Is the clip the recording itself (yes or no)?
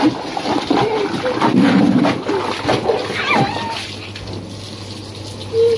yes